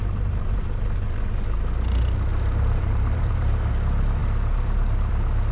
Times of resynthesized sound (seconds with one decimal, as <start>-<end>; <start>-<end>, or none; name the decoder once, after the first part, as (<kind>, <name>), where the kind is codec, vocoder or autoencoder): 2.3-3.7 (vocoder, BigVGAN v2)